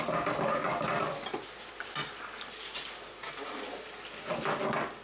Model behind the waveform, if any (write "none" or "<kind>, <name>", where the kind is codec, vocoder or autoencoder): none